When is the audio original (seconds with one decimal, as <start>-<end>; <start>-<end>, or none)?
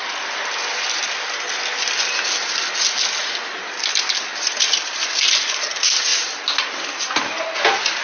0.0-4.3; 5.5-8.0